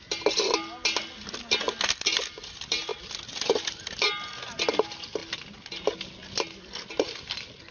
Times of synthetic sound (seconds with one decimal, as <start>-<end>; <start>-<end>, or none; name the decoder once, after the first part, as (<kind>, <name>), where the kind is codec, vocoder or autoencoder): none